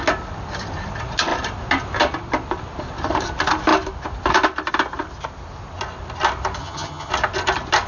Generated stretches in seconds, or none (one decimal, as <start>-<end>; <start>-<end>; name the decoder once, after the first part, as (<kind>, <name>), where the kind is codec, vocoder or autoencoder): 6.6-7.1 (vocoder, HiFi-GAN)